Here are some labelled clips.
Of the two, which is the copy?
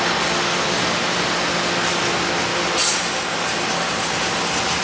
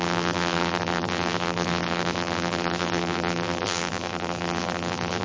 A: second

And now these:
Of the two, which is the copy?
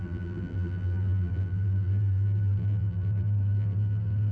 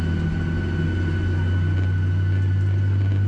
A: first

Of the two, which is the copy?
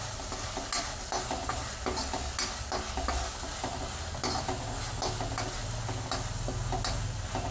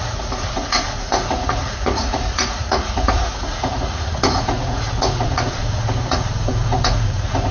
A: second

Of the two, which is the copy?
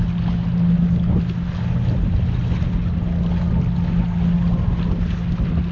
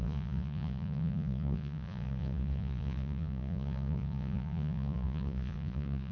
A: second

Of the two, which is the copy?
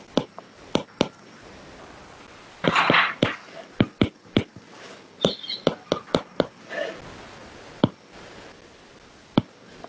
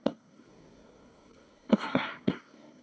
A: second